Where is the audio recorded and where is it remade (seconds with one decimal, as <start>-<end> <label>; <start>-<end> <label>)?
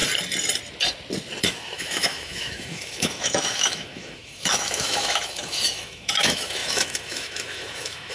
0.0-1.4 recorded; 1.4-8.1 remade